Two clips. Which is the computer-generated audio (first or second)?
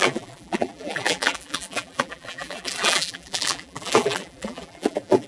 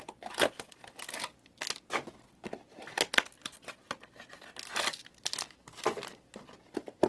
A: first